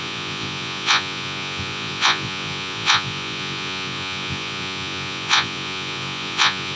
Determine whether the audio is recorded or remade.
remade